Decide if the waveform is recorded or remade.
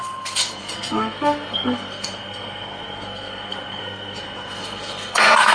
remade